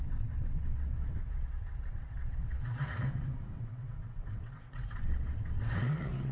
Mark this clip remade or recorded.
remade